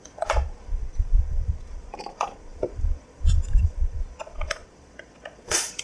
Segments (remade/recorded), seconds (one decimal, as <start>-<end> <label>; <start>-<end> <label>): 0.0-5.8 remade